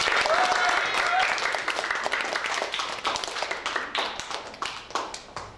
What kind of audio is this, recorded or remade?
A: recorded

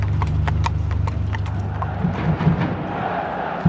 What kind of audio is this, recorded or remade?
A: recorded